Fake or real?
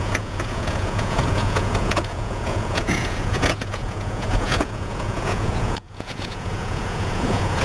fake